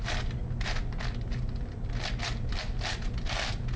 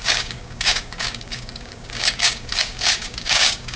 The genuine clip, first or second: first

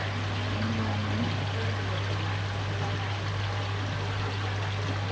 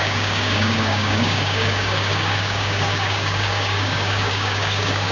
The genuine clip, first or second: first